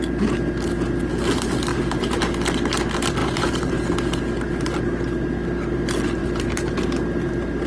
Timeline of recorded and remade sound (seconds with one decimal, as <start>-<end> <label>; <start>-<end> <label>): 0.0-1.7 recorded; 1.7-2.2 remade; 2.2-3.2 recorded; 3.2-3.7 remade; 3.7-6.2 recorded; 6.2-6.8 remade; 6.8-7.7 recorded